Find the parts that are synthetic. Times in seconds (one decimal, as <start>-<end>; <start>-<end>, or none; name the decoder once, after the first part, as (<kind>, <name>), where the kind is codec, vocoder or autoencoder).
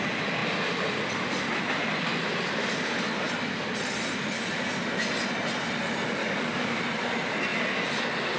6.2-6.8 (codec, DAC)